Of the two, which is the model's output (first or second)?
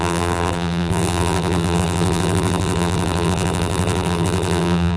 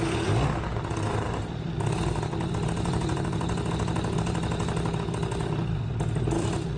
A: first